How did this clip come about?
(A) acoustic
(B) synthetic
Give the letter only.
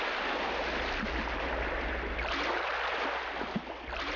A